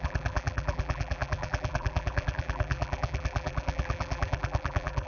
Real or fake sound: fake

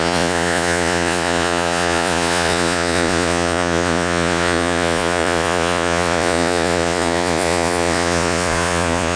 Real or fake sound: fake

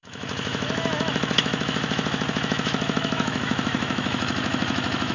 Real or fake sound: fake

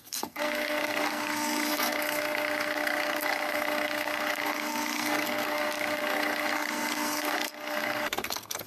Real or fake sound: fake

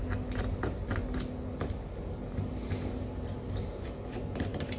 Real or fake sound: real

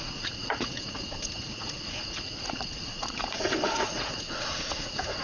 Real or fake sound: fake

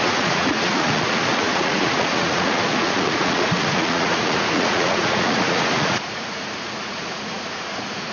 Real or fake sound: fake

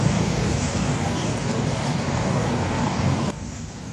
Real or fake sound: fake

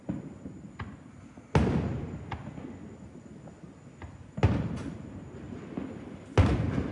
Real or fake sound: real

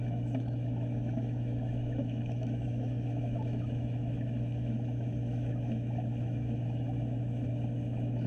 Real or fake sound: fake